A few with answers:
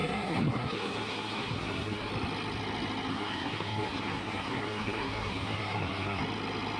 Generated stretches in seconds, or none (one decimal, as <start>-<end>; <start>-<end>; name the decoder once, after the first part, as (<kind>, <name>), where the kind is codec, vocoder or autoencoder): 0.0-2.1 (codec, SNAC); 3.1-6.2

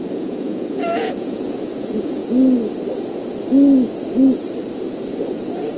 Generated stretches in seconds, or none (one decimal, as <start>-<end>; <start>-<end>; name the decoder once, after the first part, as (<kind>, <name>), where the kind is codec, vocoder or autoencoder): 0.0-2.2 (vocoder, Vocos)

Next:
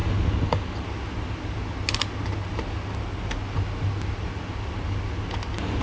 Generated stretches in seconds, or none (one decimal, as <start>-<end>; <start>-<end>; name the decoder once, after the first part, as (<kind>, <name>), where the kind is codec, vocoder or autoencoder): none

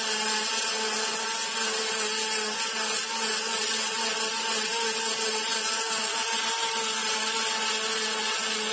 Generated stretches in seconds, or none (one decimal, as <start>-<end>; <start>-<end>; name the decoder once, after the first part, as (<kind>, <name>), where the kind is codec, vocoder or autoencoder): none